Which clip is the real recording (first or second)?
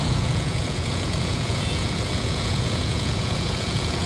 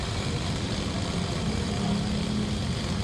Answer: second